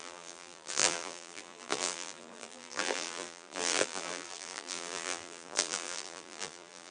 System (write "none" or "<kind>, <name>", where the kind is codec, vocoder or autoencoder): vocoder, BigVGAN v2